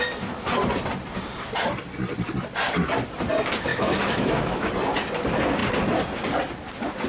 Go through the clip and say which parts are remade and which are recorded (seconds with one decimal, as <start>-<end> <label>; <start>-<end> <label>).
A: 0.0-3.7 recorded; 3.7-4.7 remade; 4.7-7.1 recorded